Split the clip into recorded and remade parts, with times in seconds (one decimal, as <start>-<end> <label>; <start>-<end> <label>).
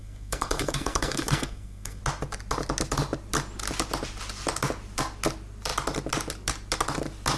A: 0.0-2.0 remade; 2.0-7.4 recorded